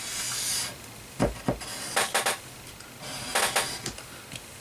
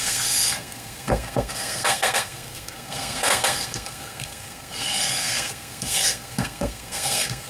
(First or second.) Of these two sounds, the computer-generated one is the second